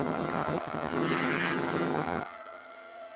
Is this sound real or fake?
fake